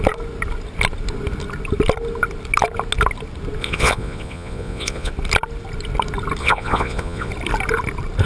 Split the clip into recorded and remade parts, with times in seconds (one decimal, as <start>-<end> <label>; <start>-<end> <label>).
0.0-3.6 recorded; 3.6-5.1 remade; 5.1-6.4 recorded; 6.4-7.3 remade; 7.3-8.3 recorded